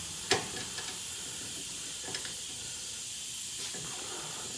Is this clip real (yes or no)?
yes